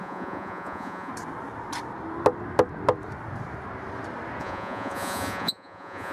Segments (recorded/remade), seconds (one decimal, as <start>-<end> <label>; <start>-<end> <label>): 0.0-1.1 remade; 1.1-4.4 recorded; 4.4-6.1 remade